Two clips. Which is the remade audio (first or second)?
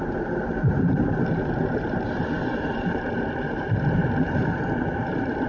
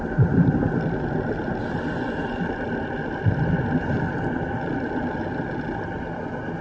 first